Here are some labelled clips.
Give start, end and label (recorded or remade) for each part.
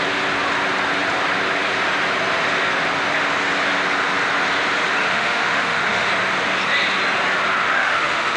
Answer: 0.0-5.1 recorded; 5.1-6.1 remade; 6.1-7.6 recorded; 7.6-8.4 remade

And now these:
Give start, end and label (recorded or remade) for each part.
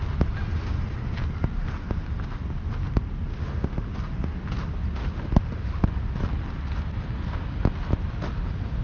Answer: 0.0-3.3 recorded; 3.3-3.9 remade; 3.9-5.0 recorded; 5.0-5.9 remade; 5.9-8.8 recorded